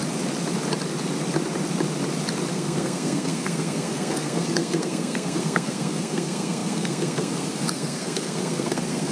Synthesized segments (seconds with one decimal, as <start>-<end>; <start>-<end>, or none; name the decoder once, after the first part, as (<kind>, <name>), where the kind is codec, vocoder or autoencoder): 2.5-9.1 (codec, SNAC)